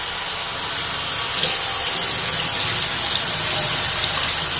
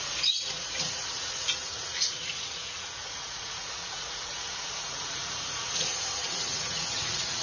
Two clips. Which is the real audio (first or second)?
first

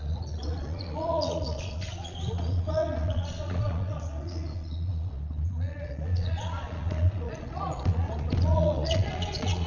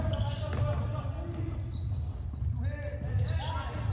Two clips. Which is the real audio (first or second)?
second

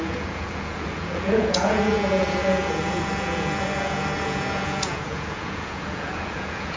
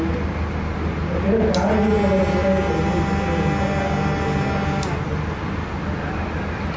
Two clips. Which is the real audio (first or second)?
second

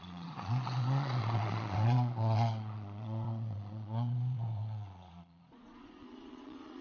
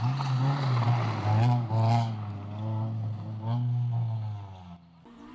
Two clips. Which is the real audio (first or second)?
second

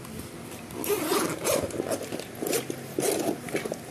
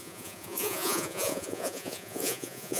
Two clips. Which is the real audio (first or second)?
first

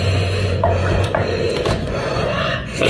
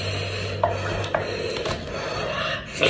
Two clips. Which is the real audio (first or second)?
second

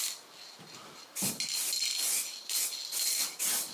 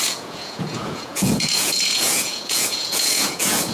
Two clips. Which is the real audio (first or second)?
first